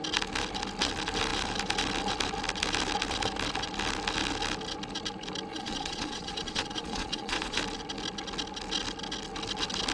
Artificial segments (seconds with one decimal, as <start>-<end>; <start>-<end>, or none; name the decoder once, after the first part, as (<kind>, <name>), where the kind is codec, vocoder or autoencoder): 5.5-7.6 (vocoder, Vocos)